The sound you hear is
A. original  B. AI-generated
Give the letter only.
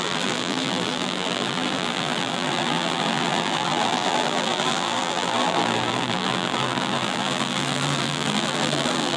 B